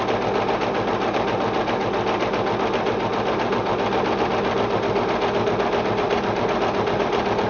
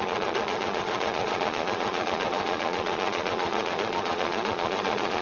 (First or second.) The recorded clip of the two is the first